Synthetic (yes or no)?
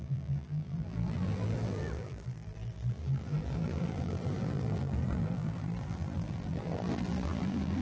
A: yes